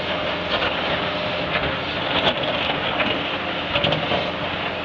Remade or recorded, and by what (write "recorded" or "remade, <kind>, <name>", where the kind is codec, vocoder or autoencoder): recorded